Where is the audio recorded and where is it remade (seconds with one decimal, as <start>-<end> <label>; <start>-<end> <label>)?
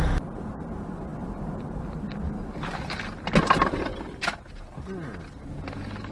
0.0-6.1 recorded